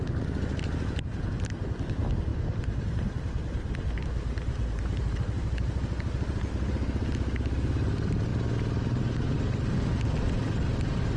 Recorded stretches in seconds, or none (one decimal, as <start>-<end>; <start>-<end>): 0.0-2.3; 6.5-11.2